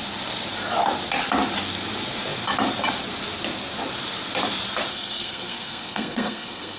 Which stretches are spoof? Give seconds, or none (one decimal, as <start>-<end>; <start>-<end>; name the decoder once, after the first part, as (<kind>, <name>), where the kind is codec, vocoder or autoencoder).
4.9-6.8 (codec, SNAC)